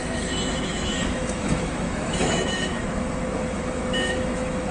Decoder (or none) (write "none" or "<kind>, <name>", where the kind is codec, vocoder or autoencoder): autoencoder, DAC-VAE